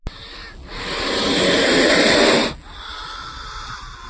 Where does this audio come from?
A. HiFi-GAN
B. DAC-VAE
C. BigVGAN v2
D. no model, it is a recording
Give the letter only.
D